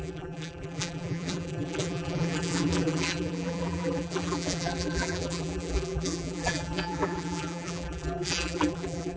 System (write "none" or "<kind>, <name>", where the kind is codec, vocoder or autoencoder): vocoder, BigVGAN v2